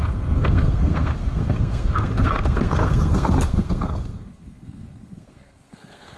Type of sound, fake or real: fake